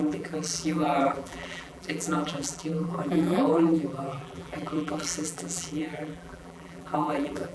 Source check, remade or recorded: remade